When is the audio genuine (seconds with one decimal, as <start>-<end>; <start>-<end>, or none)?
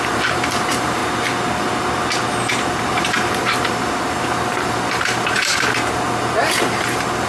1.0-2.8; 5.5-6.4